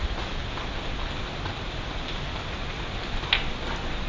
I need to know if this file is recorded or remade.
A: recorded